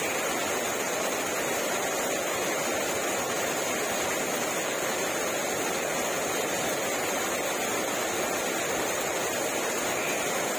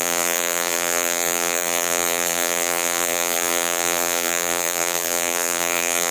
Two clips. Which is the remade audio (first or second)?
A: second